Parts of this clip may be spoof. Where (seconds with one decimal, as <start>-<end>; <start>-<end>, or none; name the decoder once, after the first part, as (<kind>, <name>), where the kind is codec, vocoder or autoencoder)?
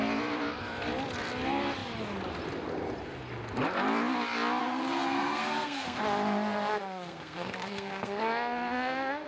4.6-6.0 (codec, SNAC); 6.7-9.3